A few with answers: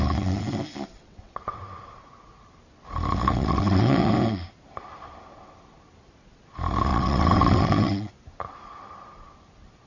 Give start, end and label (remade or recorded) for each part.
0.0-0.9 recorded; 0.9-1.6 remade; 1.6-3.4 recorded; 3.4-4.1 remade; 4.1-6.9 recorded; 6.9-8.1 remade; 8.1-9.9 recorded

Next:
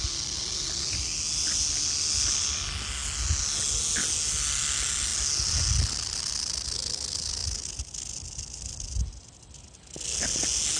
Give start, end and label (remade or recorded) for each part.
0.0-10.8 recorded

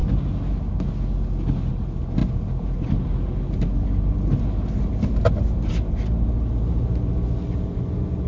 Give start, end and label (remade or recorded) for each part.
0.0-8.3 recorded

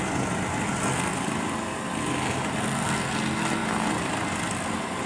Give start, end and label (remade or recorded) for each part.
0.0-5.1 recorded

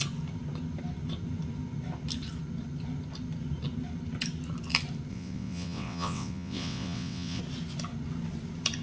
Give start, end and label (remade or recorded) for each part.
0.0-5.1 recorded; 5.1-7.4 remade; 7.4-8.8 recorded

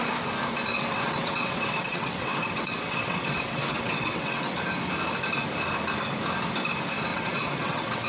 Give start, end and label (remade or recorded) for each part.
0.0-0.7 recorded; 0.7-4.5 remade; 4.5-7.1 recorded; 7.1-8.1 remade